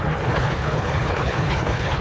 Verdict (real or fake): fake